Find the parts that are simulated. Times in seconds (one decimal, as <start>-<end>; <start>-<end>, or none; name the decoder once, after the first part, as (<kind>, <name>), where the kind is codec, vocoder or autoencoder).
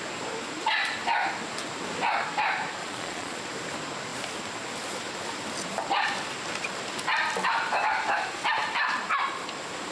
2.8-3.4 (vocoder, Vocos)